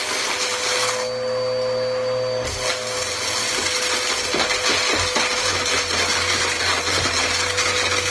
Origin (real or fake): real